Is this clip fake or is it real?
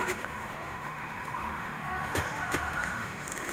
fake